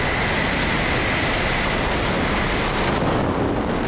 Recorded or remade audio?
recorded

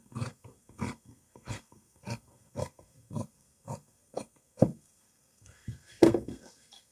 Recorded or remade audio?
remade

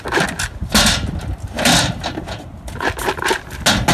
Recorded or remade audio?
recorded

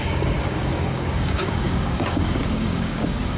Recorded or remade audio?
remade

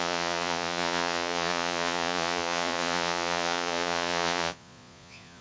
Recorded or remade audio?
remade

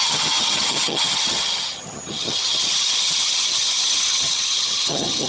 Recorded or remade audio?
remade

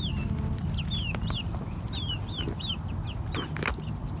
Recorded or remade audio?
recorded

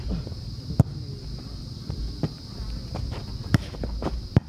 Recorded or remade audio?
recorded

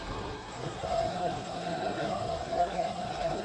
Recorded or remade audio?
remade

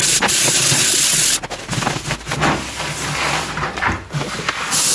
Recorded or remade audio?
recorded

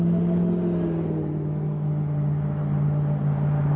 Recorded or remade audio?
recorded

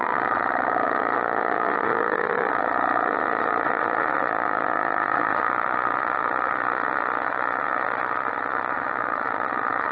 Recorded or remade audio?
remade